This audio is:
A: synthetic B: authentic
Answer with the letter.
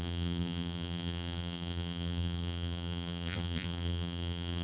A